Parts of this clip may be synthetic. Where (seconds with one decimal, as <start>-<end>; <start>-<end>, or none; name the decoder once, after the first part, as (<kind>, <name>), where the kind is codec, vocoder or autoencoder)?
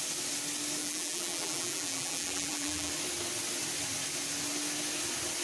0.8-2.9 (vocoder, BigVGAN v2)